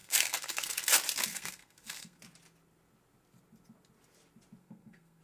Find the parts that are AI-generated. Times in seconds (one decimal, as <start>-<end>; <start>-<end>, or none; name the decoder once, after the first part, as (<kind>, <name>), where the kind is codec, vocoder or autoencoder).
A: 0.0-0.9 (codec, SNAC); 1.3-2.2; 4.6-5.2